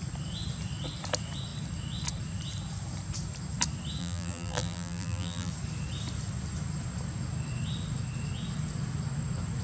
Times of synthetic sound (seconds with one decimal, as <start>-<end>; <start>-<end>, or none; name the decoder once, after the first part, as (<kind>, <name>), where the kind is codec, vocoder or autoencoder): 4.0-5.5 (vocoder, BigVGAN v2)